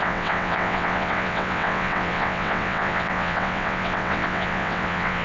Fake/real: fake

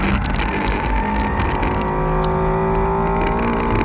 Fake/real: real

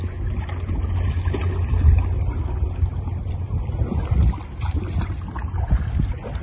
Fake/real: real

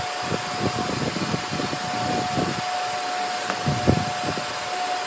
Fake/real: real